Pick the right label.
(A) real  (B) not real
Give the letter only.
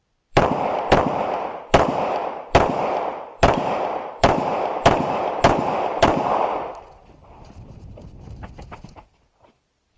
B